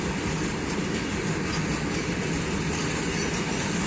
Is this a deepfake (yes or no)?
no